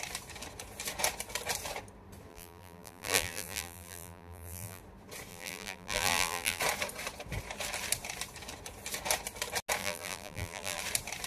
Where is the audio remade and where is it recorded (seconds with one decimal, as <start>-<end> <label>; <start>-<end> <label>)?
0.0-2.3 recorded; 2.3-4.8 remade; 4.8-5.3 recorded; 5.3-6.6 remade; 6.6-9.8 recorded; 9.8-10.8 remade; 10.8-11.3 recorded